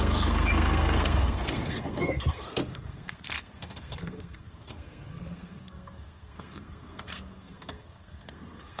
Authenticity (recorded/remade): remade